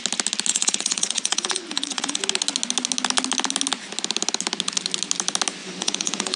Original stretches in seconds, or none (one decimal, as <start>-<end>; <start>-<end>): 0.0-0.5; 2.2-5.6